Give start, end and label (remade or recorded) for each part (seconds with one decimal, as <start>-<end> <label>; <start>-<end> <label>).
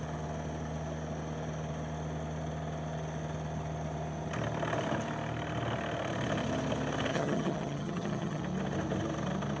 0.0-7.1 recorded; 7.1-8.4 remade; 8.4-9.6 recorded